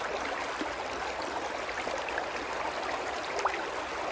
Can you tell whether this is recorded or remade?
recorded